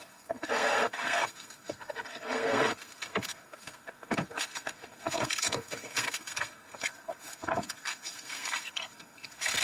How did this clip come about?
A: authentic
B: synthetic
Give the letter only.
B